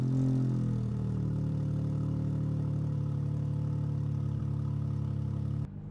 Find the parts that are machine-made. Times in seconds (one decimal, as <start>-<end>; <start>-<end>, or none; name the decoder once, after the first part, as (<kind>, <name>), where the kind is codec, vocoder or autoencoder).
0.9-4.4 (vocoder, BigVGAN v2)